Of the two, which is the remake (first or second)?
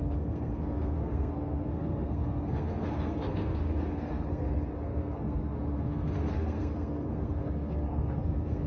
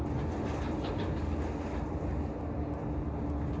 first